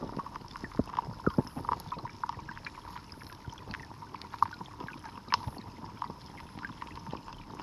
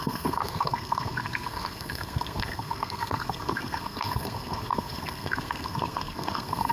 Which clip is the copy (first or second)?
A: second